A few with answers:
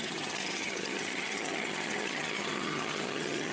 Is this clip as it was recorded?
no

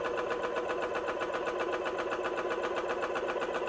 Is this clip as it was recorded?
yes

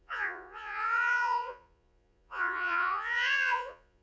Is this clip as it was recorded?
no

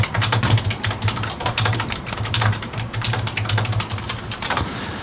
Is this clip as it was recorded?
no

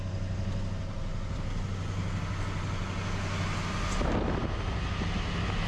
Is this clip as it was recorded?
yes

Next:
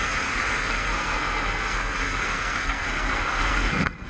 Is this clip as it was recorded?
no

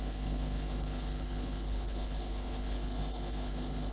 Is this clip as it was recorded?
no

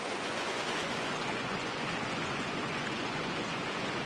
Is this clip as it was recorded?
no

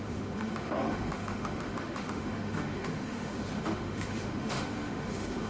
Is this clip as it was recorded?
no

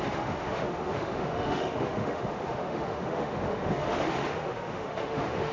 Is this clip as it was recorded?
no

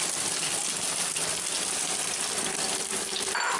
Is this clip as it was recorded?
no